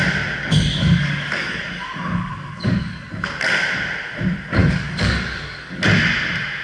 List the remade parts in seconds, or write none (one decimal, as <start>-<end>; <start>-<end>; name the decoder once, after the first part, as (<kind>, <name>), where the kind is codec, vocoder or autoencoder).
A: 0.4-3.1 (codec, DAC); 4.6-5.8